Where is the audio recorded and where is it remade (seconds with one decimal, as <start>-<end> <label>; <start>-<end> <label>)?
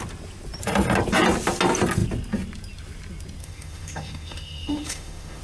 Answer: 0.0-3.4 recorded; 3.4-5.4 remade